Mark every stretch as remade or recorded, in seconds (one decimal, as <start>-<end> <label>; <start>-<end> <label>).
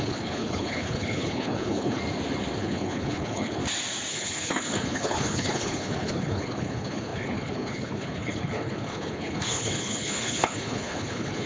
0.0-2.0 remade; 2.0-2.6 recorded; 2.6-3.6 remade; 3.6-4.1 recorded; 4.1-11.5 remade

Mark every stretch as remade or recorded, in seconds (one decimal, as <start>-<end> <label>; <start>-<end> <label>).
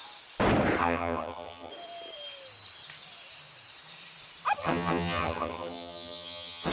0.0-0.8 recorded; 0.8-1.7 remade; 1.7-4.6 recorded; 4.6-6.7 remade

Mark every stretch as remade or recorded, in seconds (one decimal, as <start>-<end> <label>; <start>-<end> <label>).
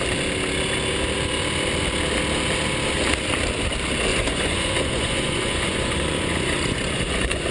0.0-4.1 recorded; 4.1-7.5 remade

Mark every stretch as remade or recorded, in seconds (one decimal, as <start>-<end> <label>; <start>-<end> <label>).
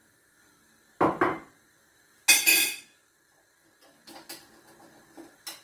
0.0-5.6 recorded